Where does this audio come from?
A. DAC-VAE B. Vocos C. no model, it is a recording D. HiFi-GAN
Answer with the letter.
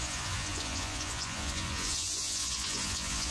B